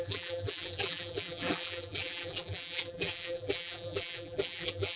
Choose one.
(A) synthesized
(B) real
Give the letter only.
A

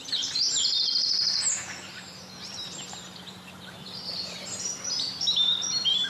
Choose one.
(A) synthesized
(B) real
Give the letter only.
A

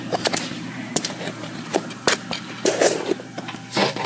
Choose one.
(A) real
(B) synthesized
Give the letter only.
B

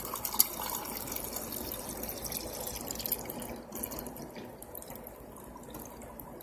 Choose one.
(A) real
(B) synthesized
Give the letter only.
A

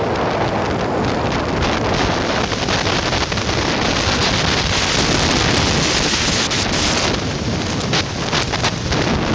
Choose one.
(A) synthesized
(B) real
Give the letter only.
B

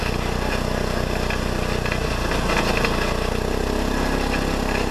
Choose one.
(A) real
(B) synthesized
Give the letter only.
A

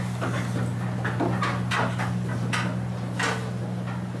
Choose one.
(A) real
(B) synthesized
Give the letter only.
A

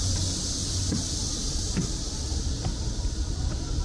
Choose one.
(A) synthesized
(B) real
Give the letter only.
B